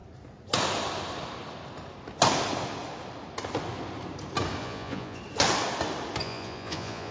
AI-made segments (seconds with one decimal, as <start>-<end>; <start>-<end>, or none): 4.6-5.2; 6.2-7.1